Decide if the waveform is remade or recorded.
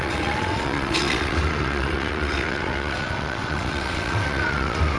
remade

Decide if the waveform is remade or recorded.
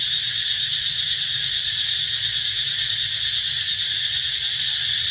recorded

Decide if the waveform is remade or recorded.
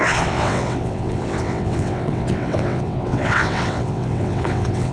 remade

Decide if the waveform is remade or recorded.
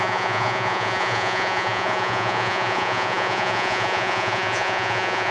remade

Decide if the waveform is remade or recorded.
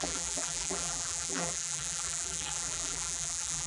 remade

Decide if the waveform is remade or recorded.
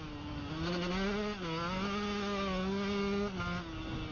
recorded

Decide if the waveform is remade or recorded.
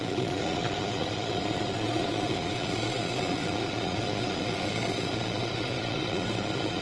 remade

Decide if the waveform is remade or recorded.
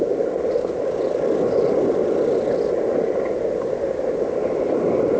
recorded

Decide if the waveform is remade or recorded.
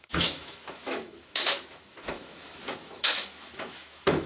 remade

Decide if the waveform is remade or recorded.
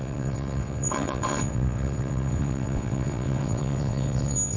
remade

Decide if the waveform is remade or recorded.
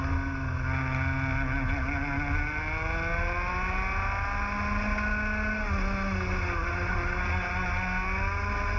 recorded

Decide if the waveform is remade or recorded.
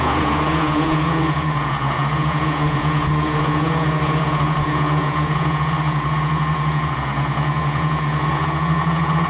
remade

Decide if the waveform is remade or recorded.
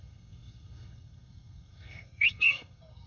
remade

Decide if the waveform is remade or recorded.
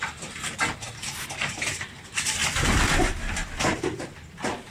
recorded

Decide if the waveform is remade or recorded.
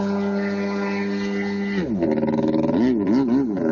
recorded